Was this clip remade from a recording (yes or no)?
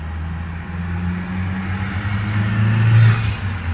no